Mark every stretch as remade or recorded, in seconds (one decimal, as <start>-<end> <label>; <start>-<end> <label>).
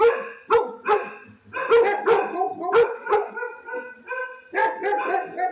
0.0-5.5 recorded